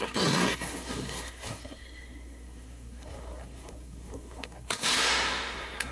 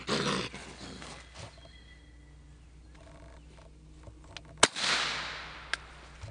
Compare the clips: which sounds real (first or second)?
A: second